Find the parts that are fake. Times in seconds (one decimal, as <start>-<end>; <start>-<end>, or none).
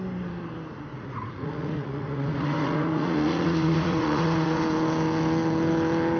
0.9-4.6